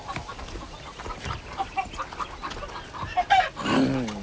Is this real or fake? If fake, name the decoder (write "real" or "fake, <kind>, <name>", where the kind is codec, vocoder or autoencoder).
real